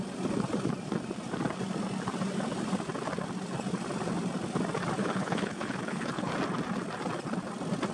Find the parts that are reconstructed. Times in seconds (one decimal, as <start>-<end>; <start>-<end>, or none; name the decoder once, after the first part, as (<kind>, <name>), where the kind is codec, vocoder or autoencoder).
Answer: 5.0-6.3 (codec, HILCodec)